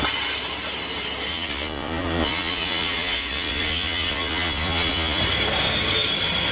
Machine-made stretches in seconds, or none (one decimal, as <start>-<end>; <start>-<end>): 1.3-5.2